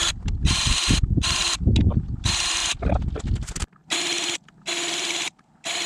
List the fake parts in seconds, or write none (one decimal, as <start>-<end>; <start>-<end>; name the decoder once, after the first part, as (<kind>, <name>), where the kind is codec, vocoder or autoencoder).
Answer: 0.0-1.4 (vocoder, BigVGAN v2); 2.1-2.6; 3.2-3.8; 4.9-5.9